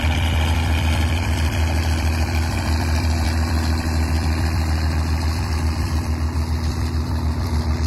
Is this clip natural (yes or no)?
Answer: no